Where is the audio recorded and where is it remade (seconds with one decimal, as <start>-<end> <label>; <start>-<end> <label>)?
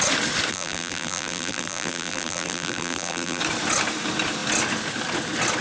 0.0-0.5 recorded; 0.5-3.4 remade; 3.4-5.6 recorded